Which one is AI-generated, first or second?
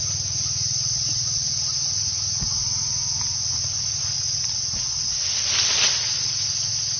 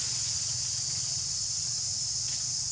second